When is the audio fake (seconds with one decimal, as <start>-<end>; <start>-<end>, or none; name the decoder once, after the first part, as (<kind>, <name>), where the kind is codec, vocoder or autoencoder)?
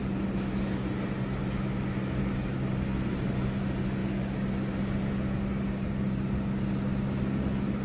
none